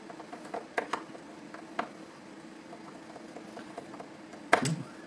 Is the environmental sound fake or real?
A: real